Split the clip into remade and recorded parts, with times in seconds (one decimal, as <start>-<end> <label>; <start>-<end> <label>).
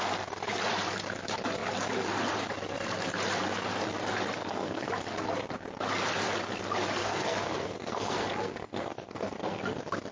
0.0-4.4 recorded; 4.4-4.9 remade; 4.9-7.0 recorded; 7.0-9.6 remade; 9.6-10.1 recorded